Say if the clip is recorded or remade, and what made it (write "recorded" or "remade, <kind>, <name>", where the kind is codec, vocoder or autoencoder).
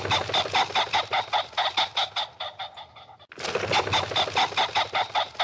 recorded